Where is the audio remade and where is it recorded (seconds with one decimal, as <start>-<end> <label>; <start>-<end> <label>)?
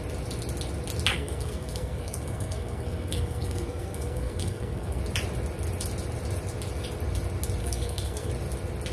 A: 0.0-1.1 recorded; 1.1-5.0 remade; 5.0-7.6 recorded; 7.6-8.3 remade; 8.3-8.9 recorded